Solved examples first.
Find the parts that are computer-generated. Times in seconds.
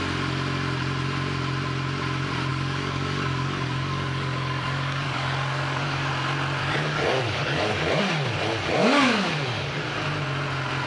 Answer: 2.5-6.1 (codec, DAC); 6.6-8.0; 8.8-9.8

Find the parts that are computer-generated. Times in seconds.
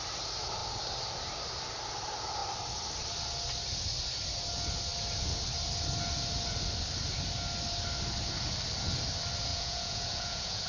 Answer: 9.5-10.7 (vocoder, Vocos)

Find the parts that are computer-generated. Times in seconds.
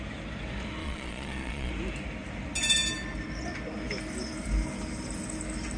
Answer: 0.8-1.7 (vocoder, Vocos)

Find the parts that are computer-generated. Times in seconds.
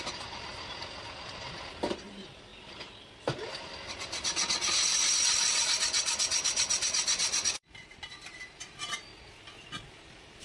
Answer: 0.0-0.5 (vocoder, BigVGAN v2); 1.9-2.5; 7.5-9.1; 10.0-10.4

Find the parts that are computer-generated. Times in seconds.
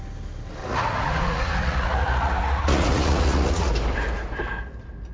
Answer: 0.6-3.7 (vocoder, Vocos)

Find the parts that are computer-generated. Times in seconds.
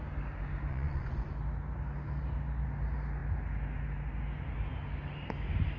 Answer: 0.7-1.3 (vocoder, Vocos)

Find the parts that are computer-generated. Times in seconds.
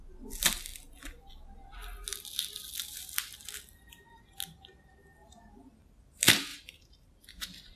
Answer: 6.5-7.8 (vocoder, BigVGAN v2)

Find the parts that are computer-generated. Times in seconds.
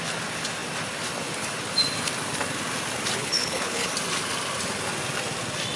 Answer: 3.2-3.9 (codec, HILCodec)